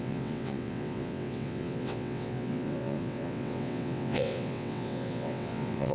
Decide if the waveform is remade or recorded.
remade